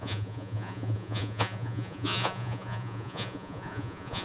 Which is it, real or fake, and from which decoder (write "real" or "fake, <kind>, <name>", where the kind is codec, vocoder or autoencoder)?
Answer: fake, vocoder, Vocos